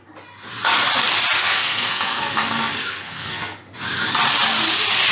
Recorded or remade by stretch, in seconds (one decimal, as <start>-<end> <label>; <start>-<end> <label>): 0.0-1.4 recorded; 1.4-3.7 remade; 3.7-5.1 recorded